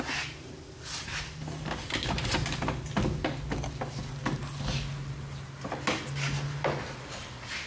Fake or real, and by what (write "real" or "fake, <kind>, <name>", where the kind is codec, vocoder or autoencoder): real